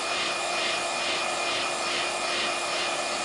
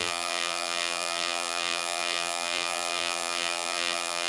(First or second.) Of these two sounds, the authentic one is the first